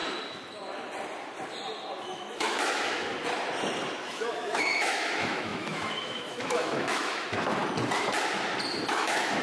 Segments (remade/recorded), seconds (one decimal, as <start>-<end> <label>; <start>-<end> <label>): 0.0-2.0 recorded; 2.0-3.1 remade; 3.1-4.1 recorded; 4.1-7.6 remade; 7.6-8.9 recorded; 8.9-9.4 remade